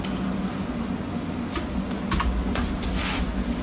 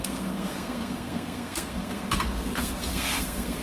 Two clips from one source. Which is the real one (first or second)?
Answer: first